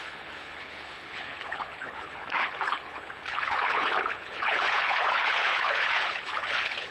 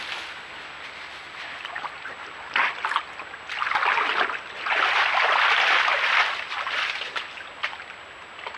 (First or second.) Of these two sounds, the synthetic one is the first